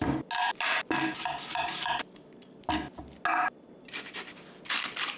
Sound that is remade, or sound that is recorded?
recorded